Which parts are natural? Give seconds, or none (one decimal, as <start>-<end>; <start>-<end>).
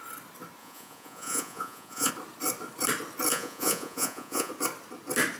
0.0-0.6; 2.1-3.3; 4.5-5.4